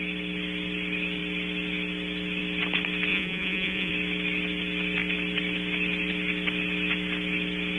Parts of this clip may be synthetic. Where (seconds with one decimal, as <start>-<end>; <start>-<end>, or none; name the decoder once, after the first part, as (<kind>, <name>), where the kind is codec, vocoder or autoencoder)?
3.1-3.9 (vocoder, Vocos)